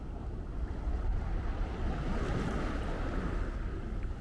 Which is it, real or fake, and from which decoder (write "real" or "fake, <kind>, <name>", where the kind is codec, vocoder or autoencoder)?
real